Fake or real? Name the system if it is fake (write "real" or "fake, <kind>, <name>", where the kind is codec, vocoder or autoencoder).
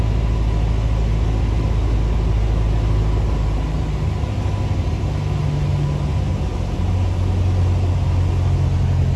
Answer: real